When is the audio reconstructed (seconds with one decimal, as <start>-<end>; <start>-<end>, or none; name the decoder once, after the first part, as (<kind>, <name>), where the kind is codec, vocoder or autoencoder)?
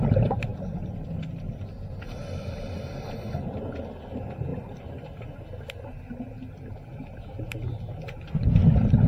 none